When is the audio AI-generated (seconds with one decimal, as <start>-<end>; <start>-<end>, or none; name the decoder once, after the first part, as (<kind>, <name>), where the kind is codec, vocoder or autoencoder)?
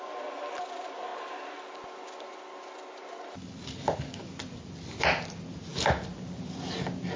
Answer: none